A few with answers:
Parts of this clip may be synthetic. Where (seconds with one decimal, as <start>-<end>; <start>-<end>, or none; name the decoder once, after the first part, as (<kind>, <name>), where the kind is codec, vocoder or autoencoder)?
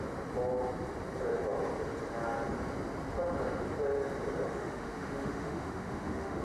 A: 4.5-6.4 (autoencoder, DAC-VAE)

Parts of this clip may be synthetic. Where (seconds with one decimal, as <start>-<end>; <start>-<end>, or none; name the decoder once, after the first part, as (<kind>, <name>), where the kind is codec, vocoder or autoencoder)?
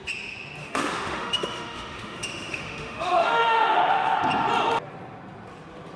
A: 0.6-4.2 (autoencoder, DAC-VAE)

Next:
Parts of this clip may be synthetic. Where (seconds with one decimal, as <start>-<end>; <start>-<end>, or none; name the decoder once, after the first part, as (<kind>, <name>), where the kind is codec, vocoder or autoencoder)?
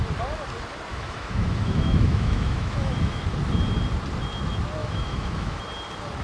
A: 0.9-3.2 (autoencoder, DAC-VAE); 4.8-5.6